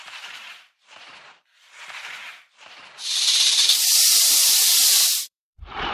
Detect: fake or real fake